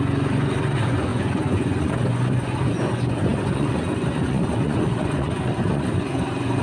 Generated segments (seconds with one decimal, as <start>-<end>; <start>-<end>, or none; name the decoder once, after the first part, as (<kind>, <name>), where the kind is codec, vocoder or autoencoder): 0.0-6.6 (vocoder, Vocos)